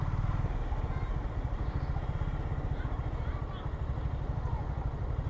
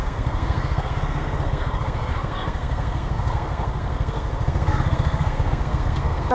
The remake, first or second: second